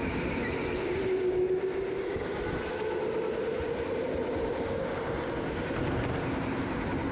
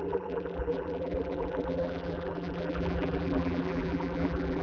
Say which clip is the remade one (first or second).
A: second